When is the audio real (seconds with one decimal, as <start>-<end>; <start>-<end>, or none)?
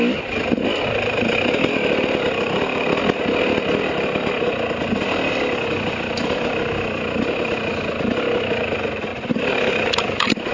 0.0-9.1